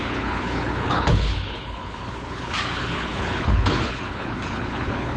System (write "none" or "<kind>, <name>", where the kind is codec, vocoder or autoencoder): codec, HILCodec